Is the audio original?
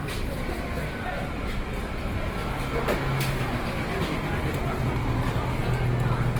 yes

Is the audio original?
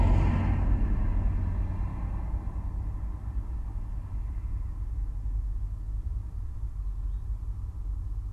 yes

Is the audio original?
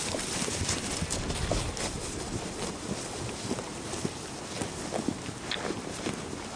yes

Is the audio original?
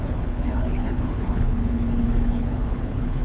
no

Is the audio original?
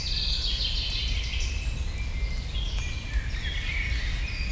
yes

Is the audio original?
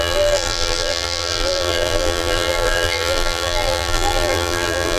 no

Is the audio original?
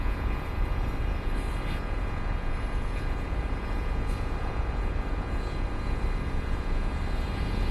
no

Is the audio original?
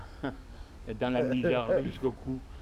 no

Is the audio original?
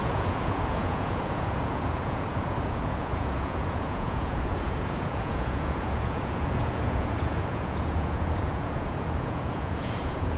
no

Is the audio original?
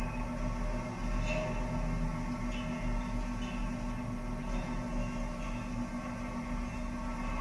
yes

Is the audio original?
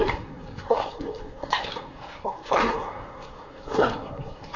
no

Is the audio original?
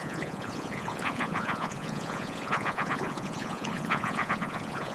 no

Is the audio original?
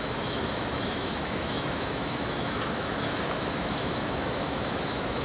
no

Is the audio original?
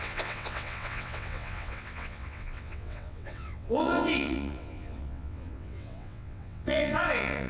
no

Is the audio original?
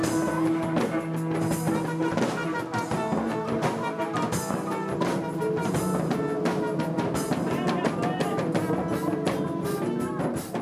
yes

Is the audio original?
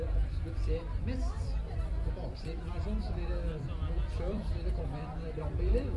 no